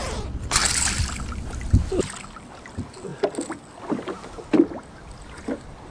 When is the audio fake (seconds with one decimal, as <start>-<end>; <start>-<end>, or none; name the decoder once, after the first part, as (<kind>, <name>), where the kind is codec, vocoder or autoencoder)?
none